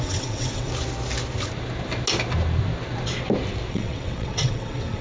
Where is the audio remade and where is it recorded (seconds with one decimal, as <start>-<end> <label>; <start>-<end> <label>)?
0.0-0.7 remade; 0.7-3.7 recorded; 3.7-5.0 remade